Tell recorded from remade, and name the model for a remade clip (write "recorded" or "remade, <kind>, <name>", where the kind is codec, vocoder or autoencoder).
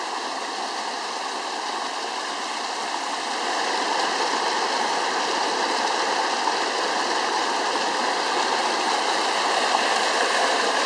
recorded